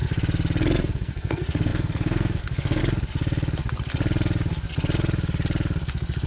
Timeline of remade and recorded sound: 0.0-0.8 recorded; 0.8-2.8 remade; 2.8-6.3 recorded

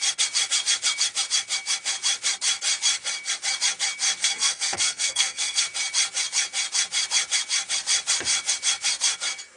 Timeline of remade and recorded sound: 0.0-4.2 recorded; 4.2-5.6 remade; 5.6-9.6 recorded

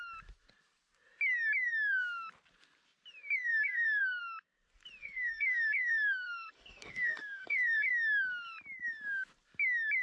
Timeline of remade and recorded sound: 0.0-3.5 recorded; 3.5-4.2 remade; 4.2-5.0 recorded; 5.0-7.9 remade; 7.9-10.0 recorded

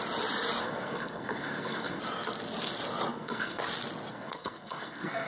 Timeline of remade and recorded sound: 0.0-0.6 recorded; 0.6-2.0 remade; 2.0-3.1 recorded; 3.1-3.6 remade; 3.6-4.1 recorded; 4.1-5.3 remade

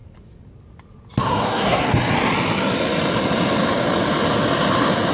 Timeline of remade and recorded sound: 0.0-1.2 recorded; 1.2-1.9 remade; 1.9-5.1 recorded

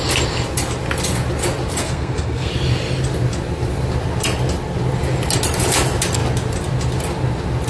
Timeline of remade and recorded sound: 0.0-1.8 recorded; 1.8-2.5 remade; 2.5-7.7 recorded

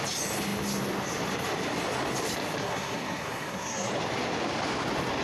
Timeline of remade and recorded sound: 0.0-2.6 recorded; 2.6-3.9 remade; 3.9-5.2 recorded

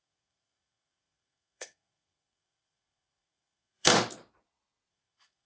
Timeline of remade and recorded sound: 0.0-3.9 remade; 3.9-4.9 recorded; 4.9-5.5 remade